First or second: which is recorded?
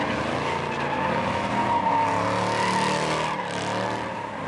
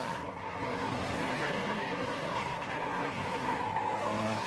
first